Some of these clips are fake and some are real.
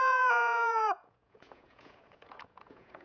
fake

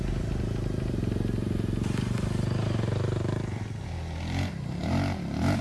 real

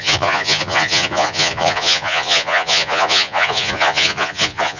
fake